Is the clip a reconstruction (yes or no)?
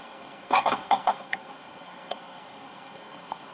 yes